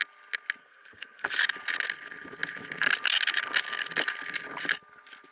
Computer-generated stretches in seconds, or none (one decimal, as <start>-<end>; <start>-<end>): 0.6-1.4